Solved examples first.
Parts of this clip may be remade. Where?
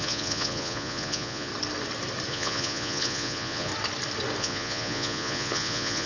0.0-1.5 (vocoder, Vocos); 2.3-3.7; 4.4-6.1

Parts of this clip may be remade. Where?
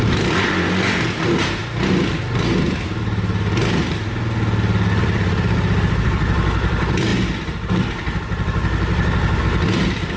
0.0-1.6 (vocoder, BigVGAN v2); 5.0-7.1; 9.4-10.2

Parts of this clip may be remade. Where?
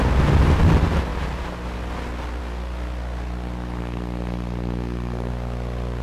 3.8-5.3 (codec, SNAC)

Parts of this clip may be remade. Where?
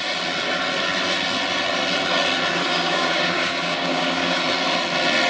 2.5-4.4 (codec, DAC)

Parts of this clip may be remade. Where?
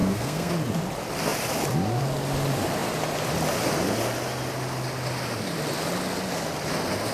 0.0-0.5 (codec, SNAC)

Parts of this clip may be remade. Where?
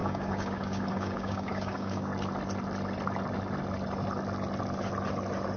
0.0-2.1 (codec, DAC)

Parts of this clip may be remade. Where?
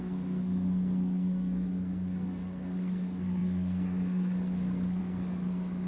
0.0-5.9 (codec, SNAC)